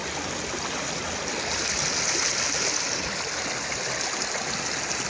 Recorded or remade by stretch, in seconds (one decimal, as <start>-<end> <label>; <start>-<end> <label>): 0.0-5.1 recorded